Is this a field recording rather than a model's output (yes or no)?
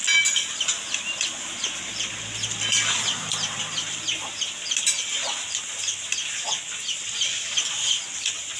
yes